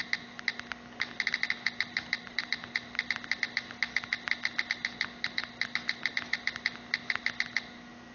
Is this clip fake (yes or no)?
no